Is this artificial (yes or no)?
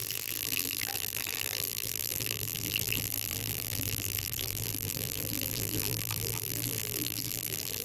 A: yes